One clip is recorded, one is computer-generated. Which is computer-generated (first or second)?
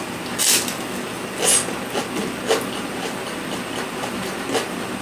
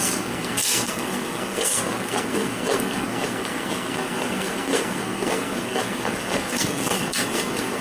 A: second